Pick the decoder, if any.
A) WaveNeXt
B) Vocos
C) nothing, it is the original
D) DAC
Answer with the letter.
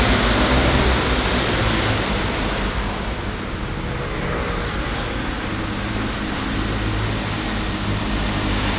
C